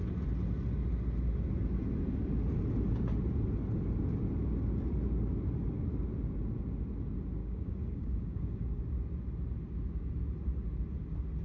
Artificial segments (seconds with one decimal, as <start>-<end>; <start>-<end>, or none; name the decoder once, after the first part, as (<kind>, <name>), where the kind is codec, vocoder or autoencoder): 7.4-8.8 (codec, DAC)